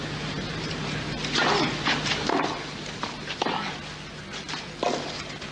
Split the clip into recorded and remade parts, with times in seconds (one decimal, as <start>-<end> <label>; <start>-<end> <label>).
0.0-5.5 recorded